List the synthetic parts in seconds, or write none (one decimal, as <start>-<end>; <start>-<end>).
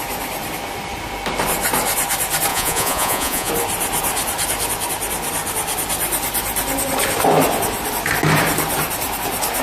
2.5-3.5